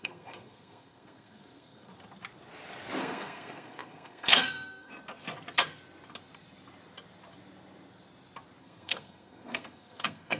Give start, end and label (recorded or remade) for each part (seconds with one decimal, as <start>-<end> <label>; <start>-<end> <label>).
0.0-1.9 remade; 1.9-3.0 recorded; 3.0-4.9 remade; 4.9-8.6 recorded; 8.6-10.4 remade